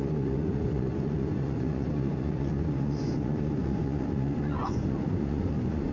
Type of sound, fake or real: fake